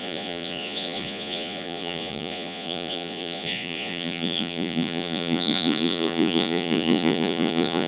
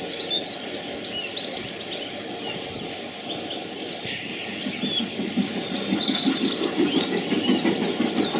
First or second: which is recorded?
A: second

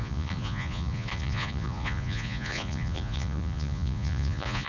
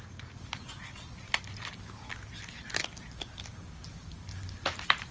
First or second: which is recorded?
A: second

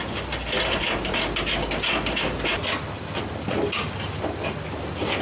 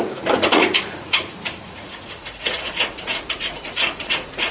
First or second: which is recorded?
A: first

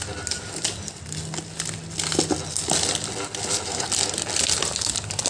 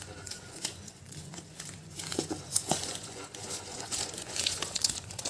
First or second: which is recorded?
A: first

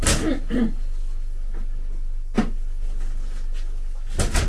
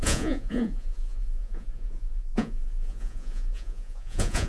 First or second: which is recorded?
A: first